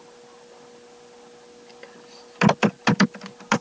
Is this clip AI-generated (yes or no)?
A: no